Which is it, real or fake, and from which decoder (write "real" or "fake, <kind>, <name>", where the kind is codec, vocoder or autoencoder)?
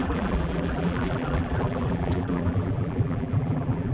fake, vocoder, BigVGAN v2